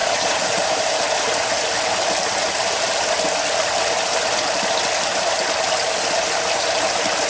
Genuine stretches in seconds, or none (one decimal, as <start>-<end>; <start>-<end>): 0.6-7.3